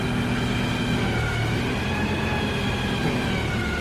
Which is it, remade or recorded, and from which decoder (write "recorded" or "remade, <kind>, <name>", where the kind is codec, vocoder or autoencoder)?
recorded